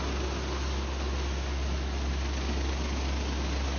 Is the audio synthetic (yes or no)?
no